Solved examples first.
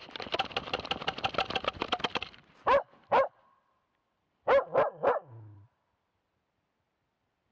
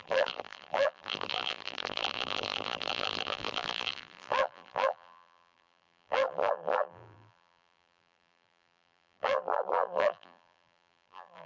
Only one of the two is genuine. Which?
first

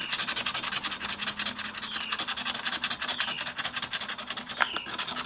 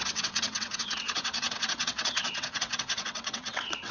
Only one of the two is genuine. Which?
first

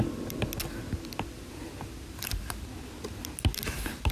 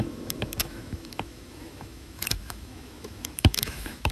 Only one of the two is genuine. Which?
first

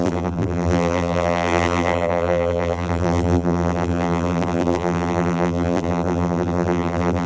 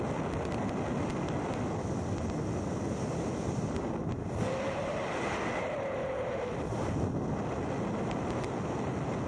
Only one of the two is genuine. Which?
second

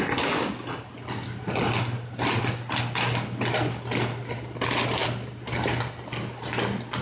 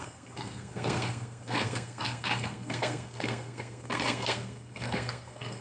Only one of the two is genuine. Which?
first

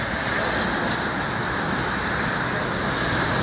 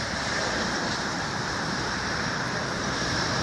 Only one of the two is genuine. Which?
first